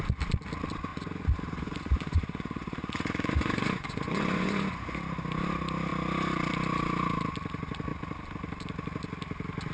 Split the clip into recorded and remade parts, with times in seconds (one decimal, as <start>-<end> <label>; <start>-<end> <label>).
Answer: 0.0-0.9 recorded; 0.9-5.0 remade; 5.0-9.7 recorded